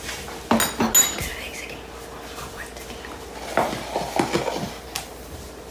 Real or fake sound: real